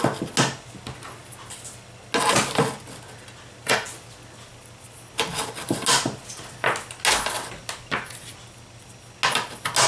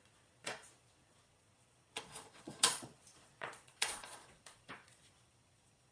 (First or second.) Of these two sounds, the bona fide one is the first